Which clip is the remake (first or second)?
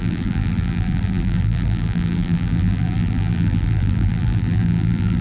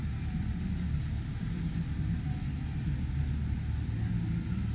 first